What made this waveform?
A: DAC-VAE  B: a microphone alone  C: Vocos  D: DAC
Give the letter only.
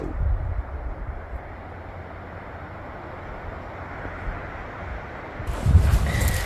B